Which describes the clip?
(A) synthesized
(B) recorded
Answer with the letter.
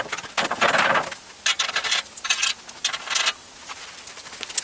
B